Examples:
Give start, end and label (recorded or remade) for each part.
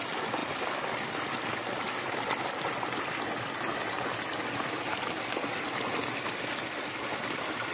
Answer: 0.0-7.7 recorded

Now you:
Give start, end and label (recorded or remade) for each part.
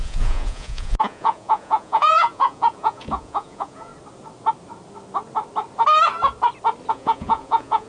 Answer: 0.0-3.9 remade; 3.9-6.9 recorded; 6.9-7.9 remade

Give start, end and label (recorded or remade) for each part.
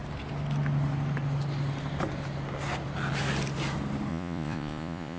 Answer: 0.0-4.1 recorded; 4.1-5.2 remade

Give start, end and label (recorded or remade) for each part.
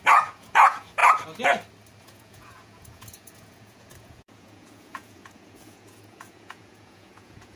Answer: 0.0-1.0 remade; 1.0-2.0 recorded; 2.0-7.6 remade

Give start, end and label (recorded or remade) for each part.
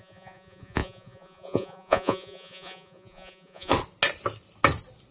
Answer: 0.0-3.7 remade; 3.7-5.1 recorded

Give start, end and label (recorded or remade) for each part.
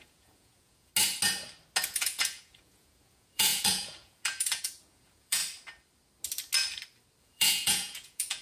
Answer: 0.0-0.9 remade; 0.9-1.8 recorded; 1.8-5.4 remade; 5.4-7.2 recorded; 7.2-8.4 remade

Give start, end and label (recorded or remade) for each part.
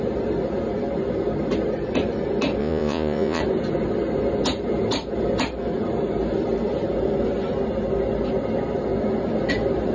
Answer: 0.0-2.6 recorded; 2.6-3.4 remade; 3.4-9.9 recorded